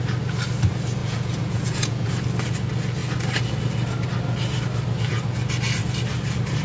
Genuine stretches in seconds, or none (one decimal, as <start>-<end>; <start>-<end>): 0.0-1.0; 2.1-6.6